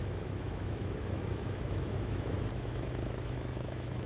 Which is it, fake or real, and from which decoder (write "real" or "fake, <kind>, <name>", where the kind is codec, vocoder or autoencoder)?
fake, autoencoder, DAC-VAE